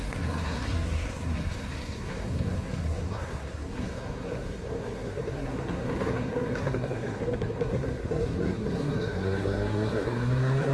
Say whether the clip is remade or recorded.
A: remade